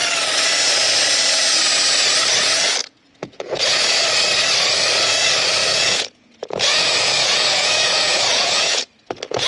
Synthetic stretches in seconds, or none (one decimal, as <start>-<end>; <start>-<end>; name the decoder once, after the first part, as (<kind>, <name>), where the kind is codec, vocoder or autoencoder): 2.8-4.0 (vocoder, Vocos); 5.6-9.5